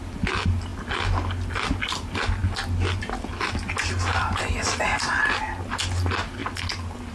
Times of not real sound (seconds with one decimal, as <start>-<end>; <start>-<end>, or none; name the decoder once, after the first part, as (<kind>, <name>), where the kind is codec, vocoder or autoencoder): none